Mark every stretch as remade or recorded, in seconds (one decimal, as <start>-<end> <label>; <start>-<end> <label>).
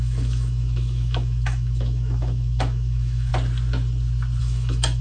0.0-3.3 remade; 3.3-4.4 recorded; 4.4-5.0 remade